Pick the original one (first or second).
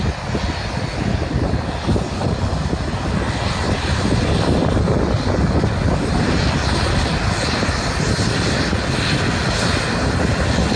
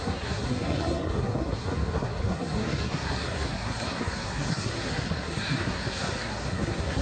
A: first